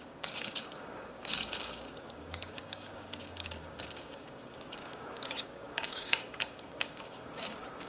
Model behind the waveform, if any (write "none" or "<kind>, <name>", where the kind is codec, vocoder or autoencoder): codec, DAC